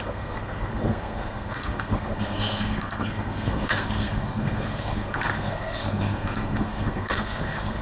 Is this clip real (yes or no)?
no